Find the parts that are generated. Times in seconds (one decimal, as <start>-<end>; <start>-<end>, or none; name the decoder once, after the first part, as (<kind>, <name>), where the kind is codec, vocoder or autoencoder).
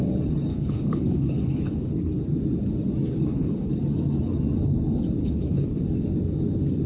0.5-2.2 (codec, HILCodec); 3.1-3.7; 5.2-5.8